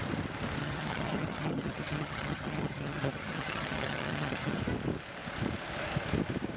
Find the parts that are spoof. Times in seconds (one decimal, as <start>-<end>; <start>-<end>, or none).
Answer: 0.6-4.6